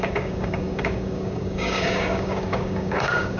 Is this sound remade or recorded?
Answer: remade